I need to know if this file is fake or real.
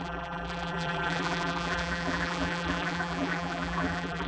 fake